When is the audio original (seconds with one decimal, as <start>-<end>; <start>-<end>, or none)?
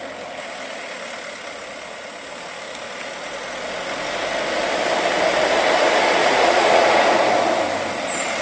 0.0-6.2; 7.0-8.4